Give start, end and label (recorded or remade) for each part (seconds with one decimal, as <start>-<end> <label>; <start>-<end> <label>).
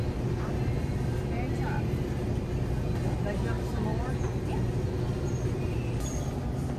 0.0-6.8 recorded